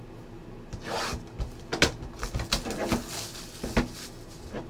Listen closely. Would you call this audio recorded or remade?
recorded